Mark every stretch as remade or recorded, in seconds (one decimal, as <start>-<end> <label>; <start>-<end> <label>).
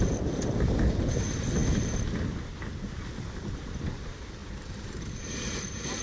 0.0-4.4 recorded; 4.4-6.0 remade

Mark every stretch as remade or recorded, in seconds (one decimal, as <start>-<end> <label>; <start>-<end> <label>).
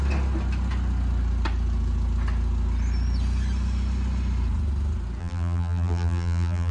0.0-5.2 recorded; 5.2-6.7 remade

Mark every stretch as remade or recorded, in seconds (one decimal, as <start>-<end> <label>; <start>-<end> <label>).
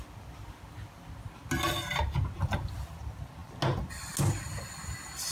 0.0-5.3 recorded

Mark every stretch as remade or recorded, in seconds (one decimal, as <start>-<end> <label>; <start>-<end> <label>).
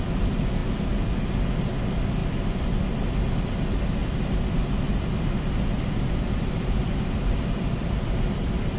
0.0-2.2 recorded; 2.2-3.3 remade; 3.3-4.0 recorded; 4.0-8.8 remade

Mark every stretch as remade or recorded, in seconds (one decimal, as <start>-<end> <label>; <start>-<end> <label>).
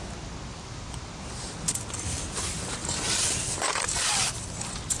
0.0-0.5 recorded; 0.5-1.2 remade; 1.2-2.8 recorded; 2.8-4.2 remade; 4.2-5.0 recorded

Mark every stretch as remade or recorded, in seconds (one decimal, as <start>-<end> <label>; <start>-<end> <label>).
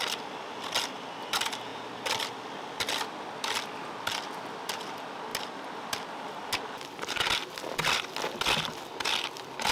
0.0-9.7 recorded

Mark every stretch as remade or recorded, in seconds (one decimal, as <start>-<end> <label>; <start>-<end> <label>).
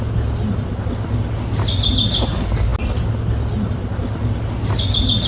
0.0-5.3 recorded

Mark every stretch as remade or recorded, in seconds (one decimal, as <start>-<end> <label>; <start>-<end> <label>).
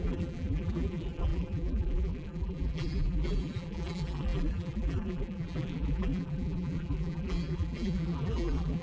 0.0-8.8 remade